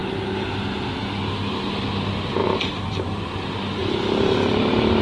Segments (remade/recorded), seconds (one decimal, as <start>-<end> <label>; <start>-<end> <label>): 0.0-0.6 remade; 0.6-2.4 recorded; 2.4-3.2 remade; 3.2-3.8 recorded; 3.8-5.0 remade